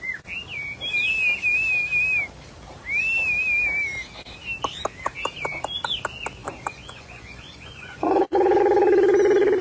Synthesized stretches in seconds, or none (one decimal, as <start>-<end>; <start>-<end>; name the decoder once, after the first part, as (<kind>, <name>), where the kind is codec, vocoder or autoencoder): 6.4-8.6 (vocoder, Vocos)